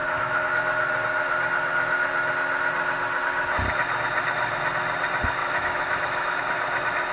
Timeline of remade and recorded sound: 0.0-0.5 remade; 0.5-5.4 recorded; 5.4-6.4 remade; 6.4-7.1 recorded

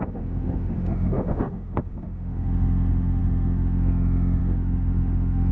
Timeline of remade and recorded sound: 0.0-5.5 remade

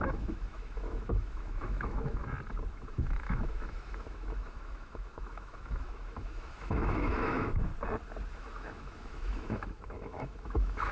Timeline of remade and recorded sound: 0.0-2.2 remade; 2.2-2.7 recorded; 2.7-7.7 remade; 7.7-8.3 recorded; 8.3-10.9 remade